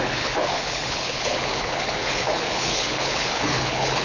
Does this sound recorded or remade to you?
remade